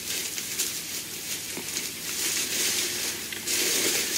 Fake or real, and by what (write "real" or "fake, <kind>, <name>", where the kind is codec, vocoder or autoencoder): fake, vocoder, BigVGAN v2